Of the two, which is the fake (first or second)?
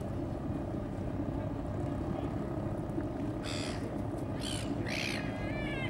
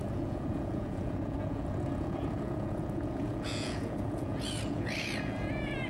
second